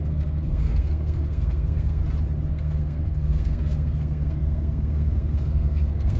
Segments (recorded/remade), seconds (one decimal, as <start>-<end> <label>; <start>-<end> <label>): 0.0-2.0 remade; 2.0-2.5 recorded; 2.5-6.2 remade